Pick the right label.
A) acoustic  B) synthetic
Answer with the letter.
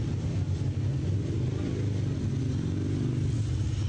A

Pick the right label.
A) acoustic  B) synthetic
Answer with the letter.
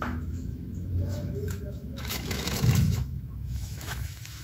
B